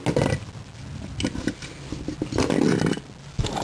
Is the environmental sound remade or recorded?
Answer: recorded